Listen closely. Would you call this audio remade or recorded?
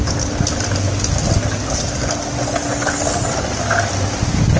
recorded